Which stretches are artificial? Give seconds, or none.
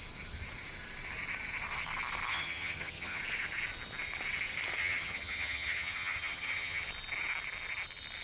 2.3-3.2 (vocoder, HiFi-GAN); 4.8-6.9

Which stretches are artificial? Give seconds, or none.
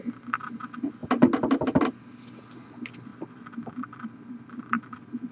3.1-5.3 (vocoder, BigVGAN v2)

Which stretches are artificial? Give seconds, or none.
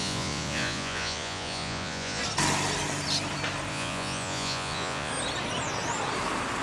0.0-2.2 (vocoder, Vocos); 3.7-5.1